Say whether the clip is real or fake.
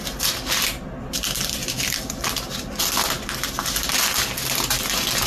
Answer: real